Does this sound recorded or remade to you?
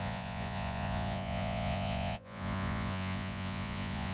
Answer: remade